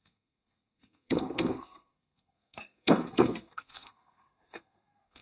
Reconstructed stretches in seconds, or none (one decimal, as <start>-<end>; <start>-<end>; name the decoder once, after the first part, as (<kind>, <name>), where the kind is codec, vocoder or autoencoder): 0.0-5.2 (codec, SNAC)